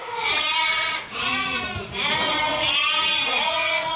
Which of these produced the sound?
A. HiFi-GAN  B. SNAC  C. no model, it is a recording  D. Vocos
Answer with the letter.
D